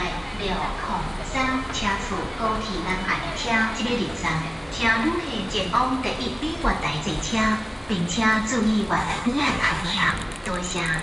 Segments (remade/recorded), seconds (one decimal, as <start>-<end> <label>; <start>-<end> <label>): 0.0-9.0 recorded; 9.0-10.1 remade; 10.1-11.0 recorded